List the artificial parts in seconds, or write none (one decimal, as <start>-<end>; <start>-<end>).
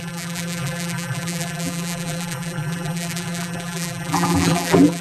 0.0-5.0